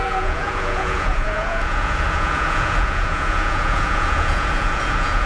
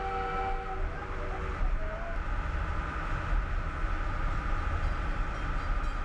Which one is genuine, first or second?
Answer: second